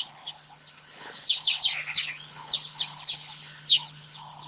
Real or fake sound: fake